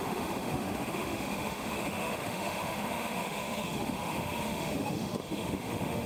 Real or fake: fake